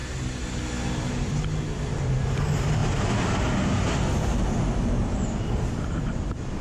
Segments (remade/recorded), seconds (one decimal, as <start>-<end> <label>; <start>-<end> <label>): 0.0-6.6 recorded